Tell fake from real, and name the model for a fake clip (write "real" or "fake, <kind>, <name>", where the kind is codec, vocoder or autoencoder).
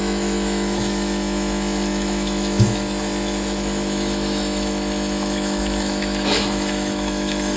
fake, autoencoder, DAC-VAE